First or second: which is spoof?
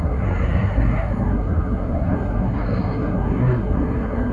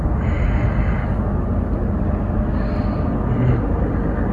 first